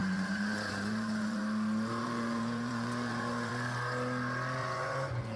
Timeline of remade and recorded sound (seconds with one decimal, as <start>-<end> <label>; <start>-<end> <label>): 0.0-1.4 remade; 1.4-2.0 recorded; 2.0-3.5 remade; 3.5-4.6 recorded; 4.6-5.4 remade